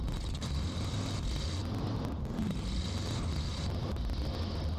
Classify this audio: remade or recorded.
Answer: recorded